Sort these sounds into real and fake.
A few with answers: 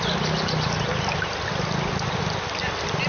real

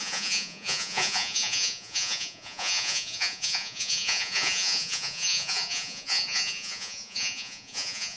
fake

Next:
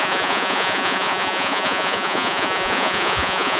fake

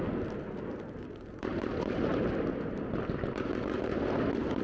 real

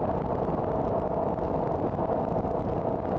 real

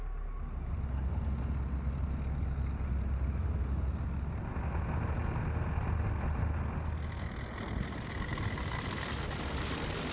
real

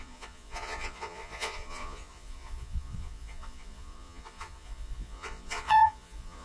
fake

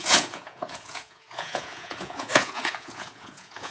fake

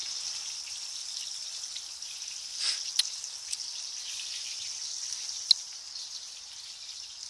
real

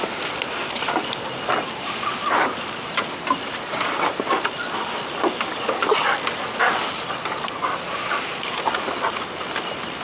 real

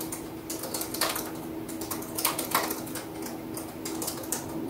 real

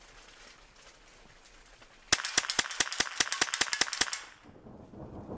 real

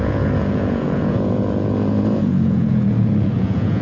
fake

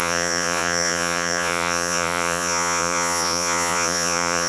fake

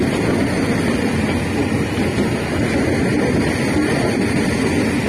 real